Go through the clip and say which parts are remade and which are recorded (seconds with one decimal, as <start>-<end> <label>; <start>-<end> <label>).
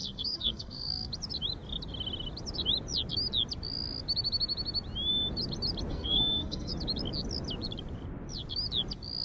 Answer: 0.0-1.1 remade; 1.1-5.9 recorded; 5.9-6.7 remade; 6.7-9.2 recorded